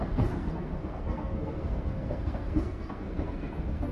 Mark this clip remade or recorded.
remade